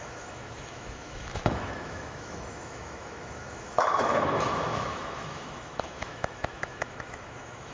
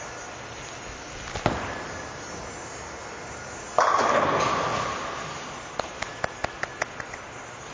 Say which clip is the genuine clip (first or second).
second